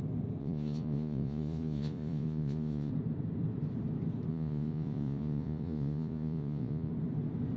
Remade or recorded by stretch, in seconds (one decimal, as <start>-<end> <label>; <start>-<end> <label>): 0.0-0.4 recorded; 0.4-2.9 remade; 2.9-4.3 recorded; 4.3-6.9 remade; 6.9-7.6 recorded